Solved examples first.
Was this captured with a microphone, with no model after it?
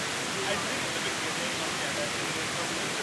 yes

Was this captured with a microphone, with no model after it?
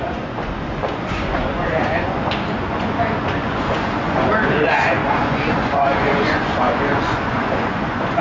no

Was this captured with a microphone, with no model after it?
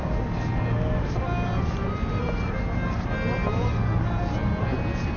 yes